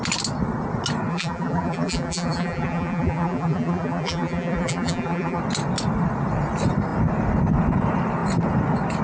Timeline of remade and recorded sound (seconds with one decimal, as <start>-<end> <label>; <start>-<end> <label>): 0.0-1.1 recorded; 1.1-5.4 remade; 5.4-9.0 recorded